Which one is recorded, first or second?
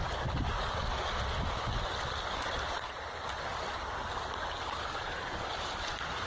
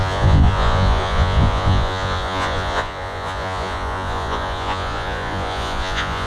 first